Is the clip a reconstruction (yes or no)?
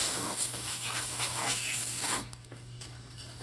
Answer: yes